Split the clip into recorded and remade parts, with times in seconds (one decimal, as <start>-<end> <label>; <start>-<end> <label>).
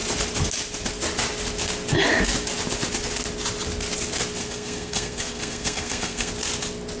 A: 0.0-4.4 recorded; 4.4-6.3 remade; 6.3-7.0 recorded